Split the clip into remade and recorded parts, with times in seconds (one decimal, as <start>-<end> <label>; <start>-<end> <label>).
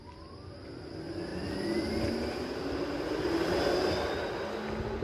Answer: 0.0-5.0 recorded